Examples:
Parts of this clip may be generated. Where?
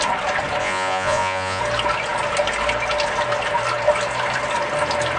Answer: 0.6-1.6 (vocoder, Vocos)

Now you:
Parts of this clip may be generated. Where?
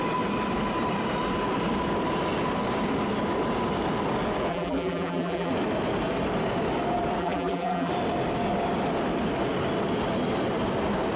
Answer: 4.5-5.5 (vocoder, BigVGAN v2); 7.2-7.9